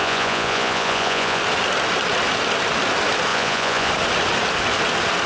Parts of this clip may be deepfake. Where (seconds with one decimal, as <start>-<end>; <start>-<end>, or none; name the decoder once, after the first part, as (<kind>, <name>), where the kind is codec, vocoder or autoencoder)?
0.0-1.4 (vocoder, Vocos); 3.3-3.9